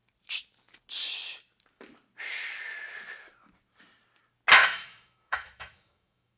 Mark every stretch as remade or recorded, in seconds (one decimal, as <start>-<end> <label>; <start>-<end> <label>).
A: 0.0-4.6 recorded; 4.6-6.4 remade